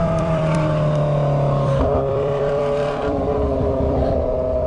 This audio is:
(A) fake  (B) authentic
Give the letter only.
A